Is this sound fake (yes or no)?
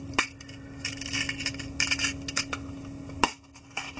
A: no